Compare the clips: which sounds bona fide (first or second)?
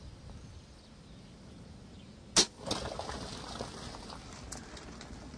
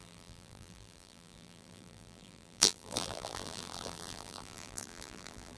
first